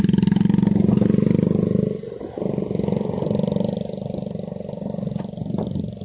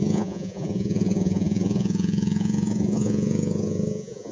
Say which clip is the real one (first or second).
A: first